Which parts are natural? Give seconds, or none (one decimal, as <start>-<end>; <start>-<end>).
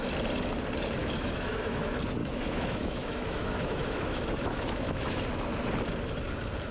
0.0-1.0; 1.8-2.2; 5.2-6.7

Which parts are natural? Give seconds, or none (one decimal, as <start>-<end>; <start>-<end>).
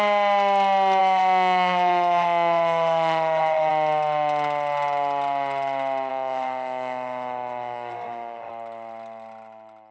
0.0-1.0; 3.7-6.1; 8.5-9.9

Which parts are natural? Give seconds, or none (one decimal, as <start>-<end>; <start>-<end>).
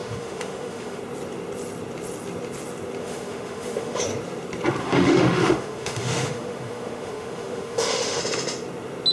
1.0-3.0; 4.0-4.8; 8.2-9.1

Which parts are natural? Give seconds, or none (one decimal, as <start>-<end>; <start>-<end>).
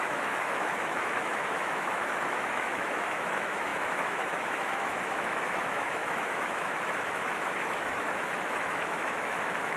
none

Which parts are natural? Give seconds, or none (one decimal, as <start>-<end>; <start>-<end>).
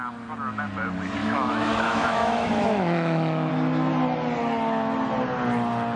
0.0-1.2; 3.5-6.0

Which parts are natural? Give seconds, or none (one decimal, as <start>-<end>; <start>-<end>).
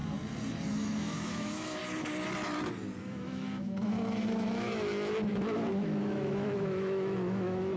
0.0-0.7; 1.8-3.0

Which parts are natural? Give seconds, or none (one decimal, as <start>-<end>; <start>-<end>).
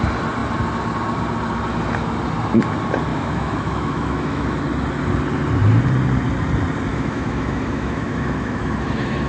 0.0-3.1; 4.6-6.9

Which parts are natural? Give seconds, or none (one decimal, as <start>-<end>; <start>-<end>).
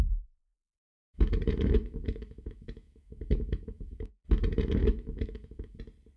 0.0-0.4; 4.1-4.8; 5.8-6.2